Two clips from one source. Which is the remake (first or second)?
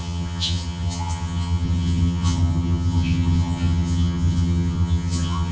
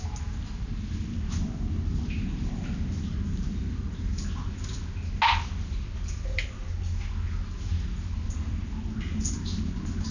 first